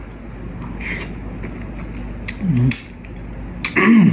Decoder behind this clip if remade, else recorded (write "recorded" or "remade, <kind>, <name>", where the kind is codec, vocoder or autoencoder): recorded